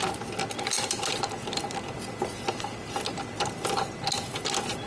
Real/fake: real